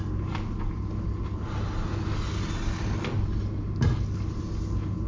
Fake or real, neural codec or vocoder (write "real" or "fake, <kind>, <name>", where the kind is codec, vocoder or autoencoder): real